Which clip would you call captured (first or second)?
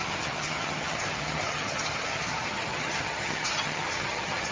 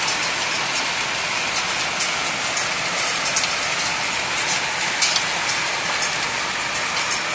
second